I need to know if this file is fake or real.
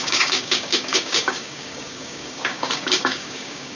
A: fake